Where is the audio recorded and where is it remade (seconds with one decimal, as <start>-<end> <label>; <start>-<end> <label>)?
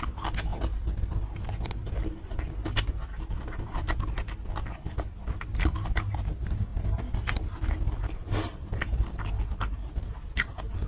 0.0-6.7 remade; 6.7-7.8 recorded; 7.8-10.9 remade